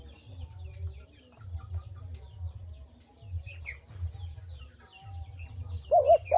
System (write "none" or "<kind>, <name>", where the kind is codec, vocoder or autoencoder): none